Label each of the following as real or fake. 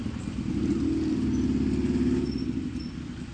real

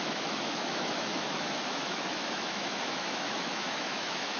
fake